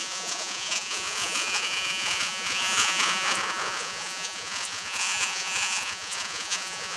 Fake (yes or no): yes